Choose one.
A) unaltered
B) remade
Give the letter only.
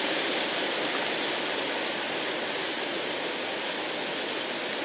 A